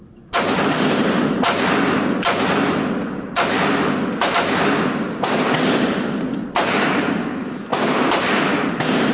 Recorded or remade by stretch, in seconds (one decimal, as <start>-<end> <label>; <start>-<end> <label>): 0.0-9.1 recorded

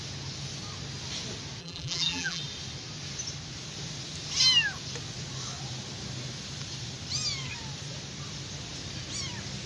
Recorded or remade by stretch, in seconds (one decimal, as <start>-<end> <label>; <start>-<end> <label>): 0.0-1.6 recorded; 1.6-2.4 remade; 2.4-9.7 recorded

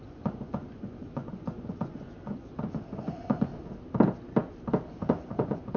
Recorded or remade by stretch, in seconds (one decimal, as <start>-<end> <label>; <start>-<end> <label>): 0.0-3.5 remade; 3.5-4.9 recorded; 4.9-5.8 remade

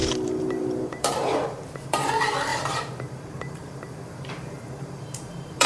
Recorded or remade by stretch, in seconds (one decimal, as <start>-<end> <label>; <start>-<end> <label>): 0.0-2.1 remade; 2.1-2.5 recorded; 2.5-5.7 remade

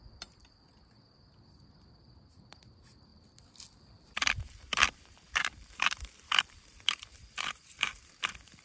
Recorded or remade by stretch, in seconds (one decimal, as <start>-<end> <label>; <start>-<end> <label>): 0.0-3.1 recorded; 3.1-8.1 remade; 8.1-8.6 recorded